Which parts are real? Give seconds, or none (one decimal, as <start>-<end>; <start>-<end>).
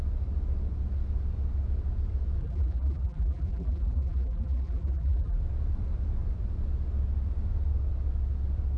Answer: 0.0-2.4; 5.4-8.8